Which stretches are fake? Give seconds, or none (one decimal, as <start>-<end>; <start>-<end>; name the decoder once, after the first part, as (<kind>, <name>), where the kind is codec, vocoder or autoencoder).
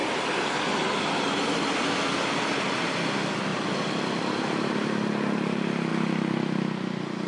0.0-2.8 (vocoder, BigVGAN v2); 3.5-5.1